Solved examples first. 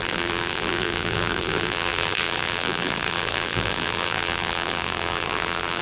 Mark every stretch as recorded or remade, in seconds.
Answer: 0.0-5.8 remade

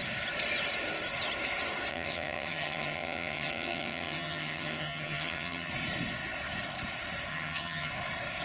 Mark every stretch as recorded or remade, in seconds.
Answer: 0.0-1.9 recorded; 1.9-5.7 remade; 5.7-7.3 recorded; 7.3-7.9 remade; 7.9-8.4 recorded